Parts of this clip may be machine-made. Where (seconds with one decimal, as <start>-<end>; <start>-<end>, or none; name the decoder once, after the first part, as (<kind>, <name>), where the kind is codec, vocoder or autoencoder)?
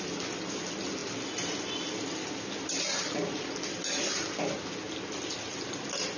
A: none